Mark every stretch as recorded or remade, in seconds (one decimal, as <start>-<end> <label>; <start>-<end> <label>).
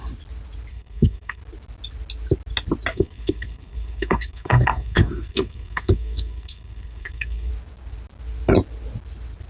0.0-0.7 recorded; 0.7-1.4 remade; 1.4-2.9 recorded; 2.9-7.5 remade; 7.5-9.5 recorded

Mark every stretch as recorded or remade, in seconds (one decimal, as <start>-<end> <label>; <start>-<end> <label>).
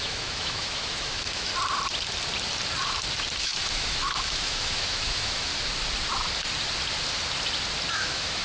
0.0-1.5 remade; 1.5-3.4 recorded; 3.4-5.5 remade; 5.5-7.9 recorded; 7.9-8.4 remade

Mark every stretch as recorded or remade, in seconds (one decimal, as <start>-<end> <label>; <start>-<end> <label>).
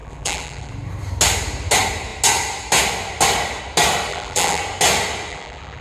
0.0-0.7 remade; 0.7-4.1 recorded; 4.1-4.6 remade; 4.6-5.3 recorded; 5.3-5.8 remade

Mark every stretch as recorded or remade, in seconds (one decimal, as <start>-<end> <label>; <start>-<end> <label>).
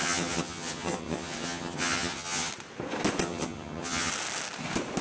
0.0-2.5 remade; 2.5-3.2 recorded; 3.2-4.1 remade; 4.1-5.0 recorded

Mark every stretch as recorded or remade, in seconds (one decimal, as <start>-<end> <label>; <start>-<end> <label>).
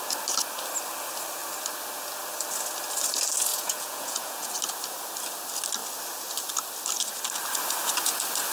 0.0-3.5 recorded; 3.5-4.5 remade; 4.5-8.5 recorded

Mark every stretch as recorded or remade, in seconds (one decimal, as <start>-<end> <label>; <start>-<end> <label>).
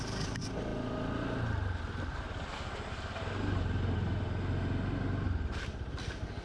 0.0-6.4 recorded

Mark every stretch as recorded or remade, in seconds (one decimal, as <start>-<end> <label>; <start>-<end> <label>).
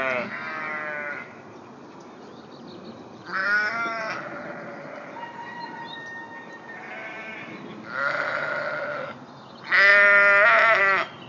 0.0-3.4 recorded; 3.4-4.0 remade; 4.0-11.3 recorded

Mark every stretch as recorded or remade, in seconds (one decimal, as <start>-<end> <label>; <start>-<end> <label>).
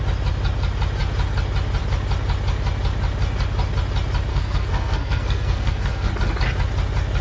0.0-4.3 recorded; 4.3-6.1 remade; 6.1-7.2 recorded